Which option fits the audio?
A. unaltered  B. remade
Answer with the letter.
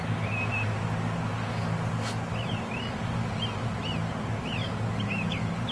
A